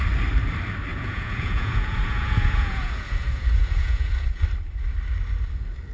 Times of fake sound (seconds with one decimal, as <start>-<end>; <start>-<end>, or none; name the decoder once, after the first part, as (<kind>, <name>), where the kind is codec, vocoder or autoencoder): 0.9-4.4 (vocoder, Vocos)

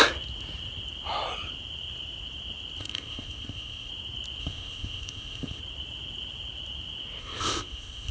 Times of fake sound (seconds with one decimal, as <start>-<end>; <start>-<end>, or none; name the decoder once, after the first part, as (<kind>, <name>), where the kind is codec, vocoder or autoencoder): 2.8-3.9 (codec, ZipCodec); 4.4-5.6; 7.2-8.1

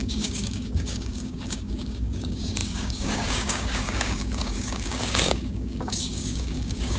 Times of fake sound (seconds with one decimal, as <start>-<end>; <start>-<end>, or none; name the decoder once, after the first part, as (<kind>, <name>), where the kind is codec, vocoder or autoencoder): 0.0-7.0 (codec, DAC)

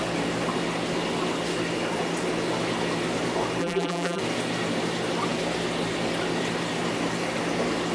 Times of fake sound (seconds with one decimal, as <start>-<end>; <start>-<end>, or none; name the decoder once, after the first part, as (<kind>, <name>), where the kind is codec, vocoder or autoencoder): 3.6-4.2 (vocoder, BigVGAN v2)

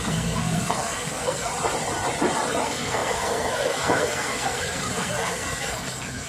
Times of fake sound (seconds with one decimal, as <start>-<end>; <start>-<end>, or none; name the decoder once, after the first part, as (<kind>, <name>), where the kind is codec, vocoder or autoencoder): 0.0-1.5 (codec, SNAC); 2.6-6.3

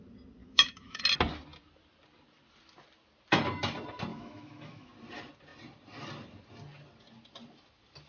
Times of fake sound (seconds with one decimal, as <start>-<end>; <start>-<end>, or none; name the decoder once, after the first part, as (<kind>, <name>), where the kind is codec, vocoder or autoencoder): 0.4-1.0 (autoencoder, DAC-VAE); 4.1-4.9

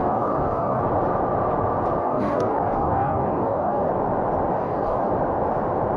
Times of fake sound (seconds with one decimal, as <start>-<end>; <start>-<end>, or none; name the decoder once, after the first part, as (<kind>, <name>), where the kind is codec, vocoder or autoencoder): 0.0-0.8 (codec, DAC); 2.0-3.9; 4.5-5.1

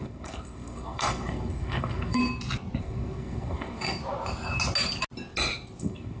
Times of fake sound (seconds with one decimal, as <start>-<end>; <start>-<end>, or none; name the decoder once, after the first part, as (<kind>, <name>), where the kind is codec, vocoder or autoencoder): 0.0-2.2 (codec, SNAC); 2.8-4.0; 5.8-6.2